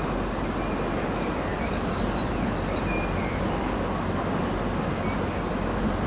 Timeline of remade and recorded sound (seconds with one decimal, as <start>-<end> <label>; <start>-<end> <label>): 0.0-1.5 recorded; 1.5-3.2 remade; 3.2-6.1 recorded